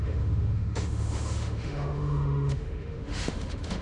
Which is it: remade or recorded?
remade